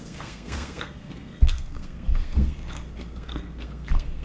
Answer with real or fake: fake